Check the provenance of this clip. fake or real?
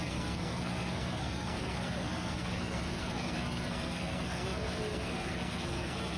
fake